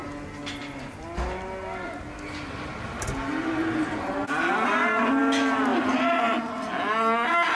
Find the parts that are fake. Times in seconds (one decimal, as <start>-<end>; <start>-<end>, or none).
none